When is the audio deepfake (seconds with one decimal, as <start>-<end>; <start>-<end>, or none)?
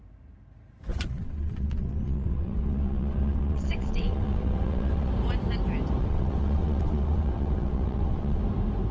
0.9-5.1; 6.0-8.4